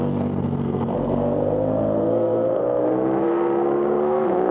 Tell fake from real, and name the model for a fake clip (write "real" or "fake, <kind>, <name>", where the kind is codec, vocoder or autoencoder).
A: fake, codec, SNAC